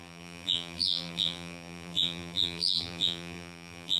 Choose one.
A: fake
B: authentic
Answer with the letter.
A